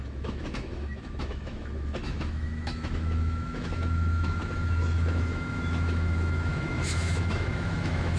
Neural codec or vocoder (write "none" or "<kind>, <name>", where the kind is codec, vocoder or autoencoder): autoencoder, DAC-VAE